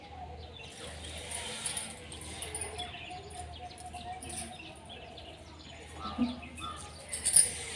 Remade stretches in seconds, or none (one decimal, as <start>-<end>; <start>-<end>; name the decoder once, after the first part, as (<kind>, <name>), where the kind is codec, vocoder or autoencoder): none